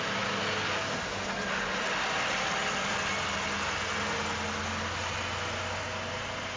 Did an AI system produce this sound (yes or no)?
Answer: no